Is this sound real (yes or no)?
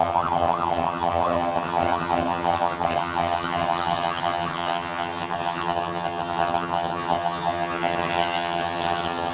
no